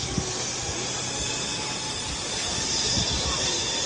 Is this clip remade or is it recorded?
recorded